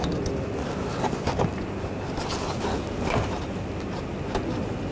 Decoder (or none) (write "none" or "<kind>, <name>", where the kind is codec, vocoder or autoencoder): none